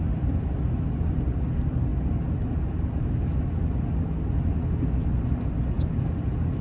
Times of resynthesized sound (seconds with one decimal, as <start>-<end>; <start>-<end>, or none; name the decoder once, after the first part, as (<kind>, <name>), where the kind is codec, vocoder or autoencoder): none